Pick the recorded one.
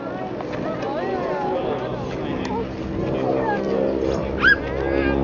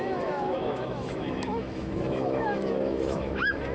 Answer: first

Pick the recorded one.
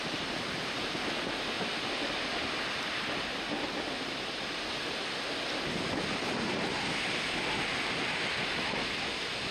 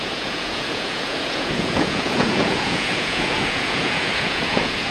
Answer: first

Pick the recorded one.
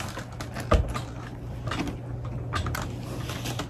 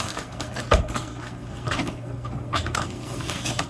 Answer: first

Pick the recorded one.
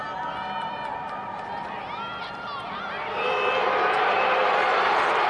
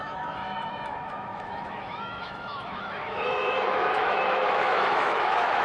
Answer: first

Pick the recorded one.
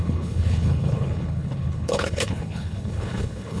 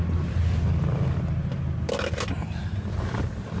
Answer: second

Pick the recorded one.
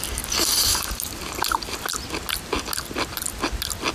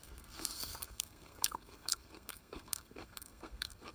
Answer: first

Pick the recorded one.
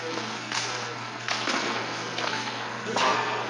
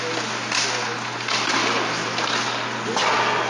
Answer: second